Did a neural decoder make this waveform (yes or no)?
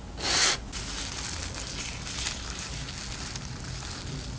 no